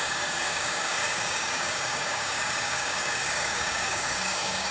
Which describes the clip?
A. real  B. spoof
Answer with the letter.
B